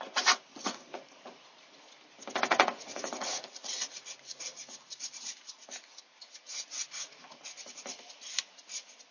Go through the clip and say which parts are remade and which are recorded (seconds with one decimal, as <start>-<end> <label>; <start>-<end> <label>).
0.0-0.5 recorded; 0.5-1.8 remade; 1.8-2.5 recorded; 2.5-7.1 remade; 7.1-9.1 recorded